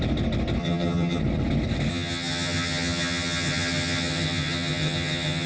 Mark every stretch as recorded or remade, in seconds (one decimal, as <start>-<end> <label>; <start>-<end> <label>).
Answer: 0.0-0.6 recorded; 0.6-1.2 remade; 1.2-1.9 recorded; 1.9-5.5 remade